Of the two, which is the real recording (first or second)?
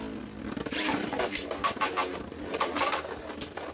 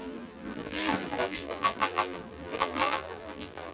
first